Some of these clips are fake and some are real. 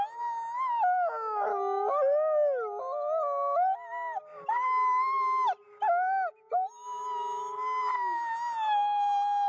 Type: real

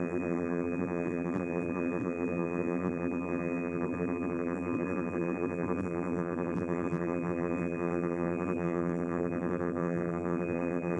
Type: fake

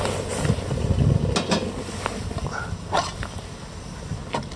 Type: fake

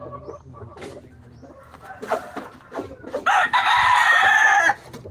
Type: fake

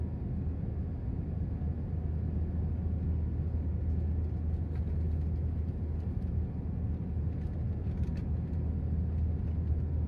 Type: real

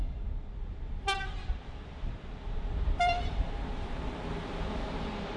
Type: real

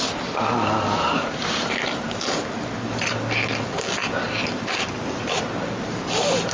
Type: real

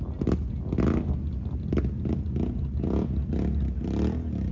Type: real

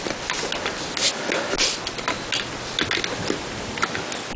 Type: real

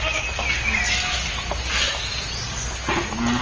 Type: real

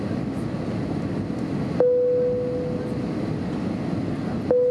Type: real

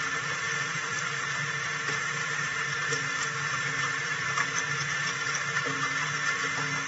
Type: real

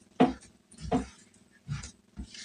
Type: real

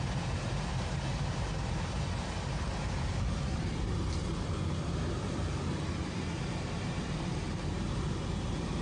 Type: fake